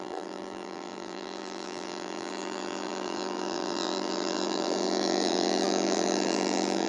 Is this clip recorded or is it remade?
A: remade